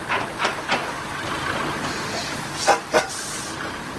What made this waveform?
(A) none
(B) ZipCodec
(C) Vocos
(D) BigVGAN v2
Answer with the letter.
A